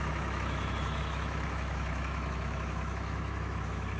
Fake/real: fake